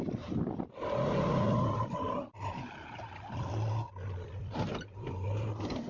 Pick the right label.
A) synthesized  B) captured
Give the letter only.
B